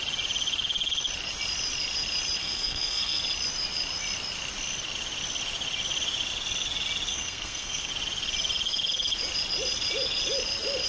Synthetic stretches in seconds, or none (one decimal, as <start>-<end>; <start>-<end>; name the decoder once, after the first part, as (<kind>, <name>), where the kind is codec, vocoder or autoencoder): 2.4-3.2 (codec, SNAC); 7.1-7.9